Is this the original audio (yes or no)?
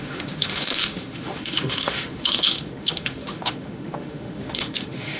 no